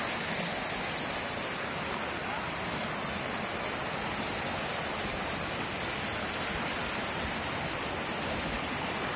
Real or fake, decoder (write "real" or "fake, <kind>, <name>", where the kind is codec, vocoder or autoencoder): real